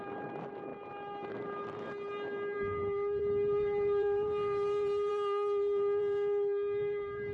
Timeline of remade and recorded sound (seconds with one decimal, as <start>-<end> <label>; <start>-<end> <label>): 0.0-7.3 remade